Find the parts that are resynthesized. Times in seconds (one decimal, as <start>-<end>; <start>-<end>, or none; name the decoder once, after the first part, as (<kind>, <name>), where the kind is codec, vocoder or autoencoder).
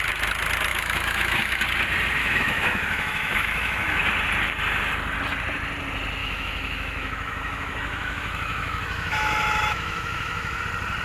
0.7-1.6 (autoencoder, DAC-VAE); 2.2-4.0; 6.2-10.6